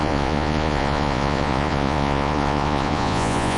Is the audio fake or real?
fake